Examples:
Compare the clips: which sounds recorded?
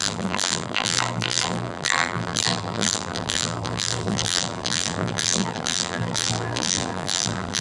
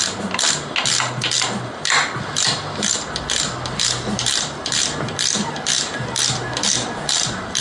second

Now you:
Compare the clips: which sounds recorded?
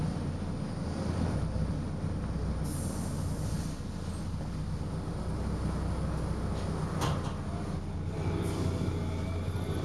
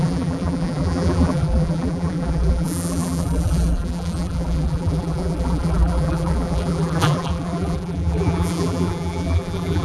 first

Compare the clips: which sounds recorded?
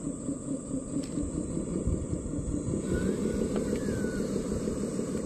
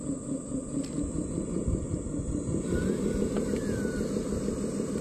second